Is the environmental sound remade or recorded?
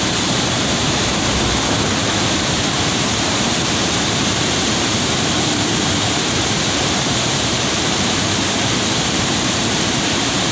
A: remade